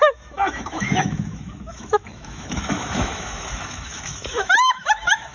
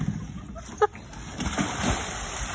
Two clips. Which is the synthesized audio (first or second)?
first